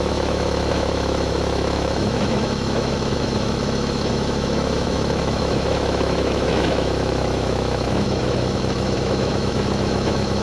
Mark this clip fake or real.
fake